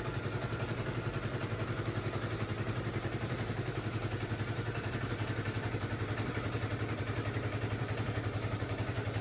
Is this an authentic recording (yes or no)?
no